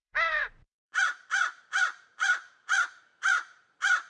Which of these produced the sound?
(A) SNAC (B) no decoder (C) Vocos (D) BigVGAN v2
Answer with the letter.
D